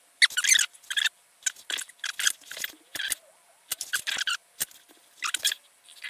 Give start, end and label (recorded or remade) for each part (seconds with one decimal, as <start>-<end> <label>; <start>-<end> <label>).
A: 0.0-6.1 recorded